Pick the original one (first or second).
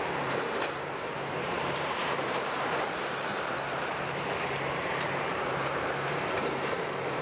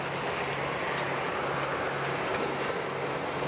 second